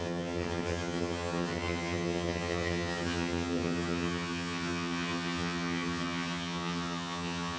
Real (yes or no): no